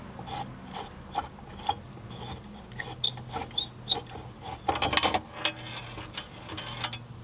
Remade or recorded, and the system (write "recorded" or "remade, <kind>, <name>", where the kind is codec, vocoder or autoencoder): recorded